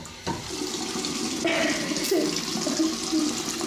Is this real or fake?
real